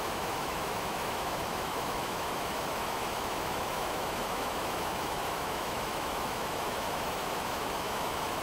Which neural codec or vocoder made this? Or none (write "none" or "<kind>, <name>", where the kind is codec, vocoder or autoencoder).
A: autoencoder, DAC-VAE